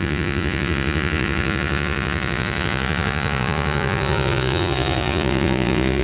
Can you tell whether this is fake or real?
fake